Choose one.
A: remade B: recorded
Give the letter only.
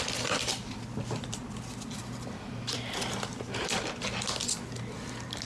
B